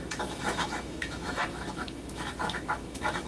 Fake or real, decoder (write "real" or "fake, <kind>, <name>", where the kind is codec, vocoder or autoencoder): fake, autoencoder, DAC-VAE